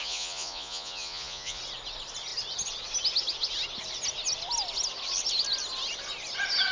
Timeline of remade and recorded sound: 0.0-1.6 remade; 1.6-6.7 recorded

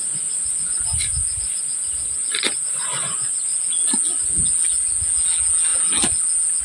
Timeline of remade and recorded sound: 0.0-6.6 recorded

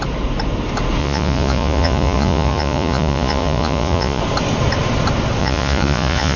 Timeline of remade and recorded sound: 0.0-1.0 recorded; 1.0-4.2 remade; 4.2-5.4 recorded; 5.4-6.4 remade

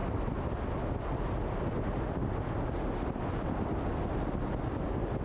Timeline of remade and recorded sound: 0.0-5.2 recorded

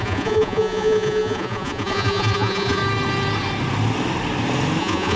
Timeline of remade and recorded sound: 0.0-2.8 remade; 2.8-4.8 recorded; 4.8-5.2 remade